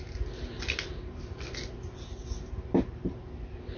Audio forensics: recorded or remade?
recorded